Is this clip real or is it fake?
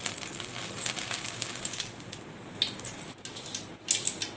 real